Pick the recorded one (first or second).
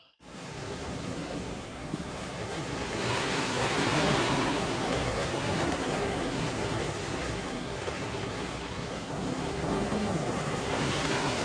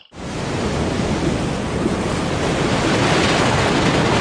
second